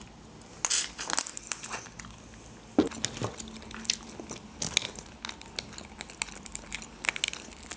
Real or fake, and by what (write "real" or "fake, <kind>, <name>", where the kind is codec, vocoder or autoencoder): real